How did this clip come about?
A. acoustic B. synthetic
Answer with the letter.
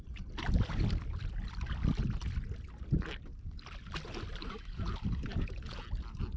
A